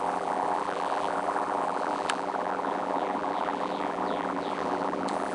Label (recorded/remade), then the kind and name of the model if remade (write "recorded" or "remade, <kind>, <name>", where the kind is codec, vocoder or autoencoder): remade, vocoder, BigVGAN v2